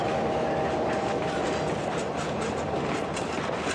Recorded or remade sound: recorded